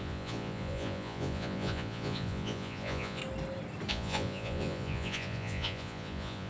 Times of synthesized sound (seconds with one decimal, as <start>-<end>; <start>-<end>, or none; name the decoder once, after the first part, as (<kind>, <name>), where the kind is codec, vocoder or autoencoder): 0.0-3.2 (vocoder, Vocos); 3.9-6.5